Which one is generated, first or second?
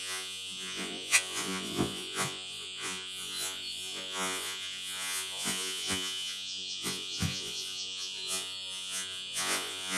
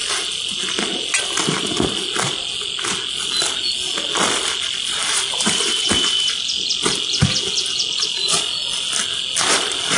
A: first